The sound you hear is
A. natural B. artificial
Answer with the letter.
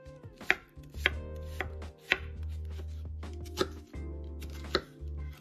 A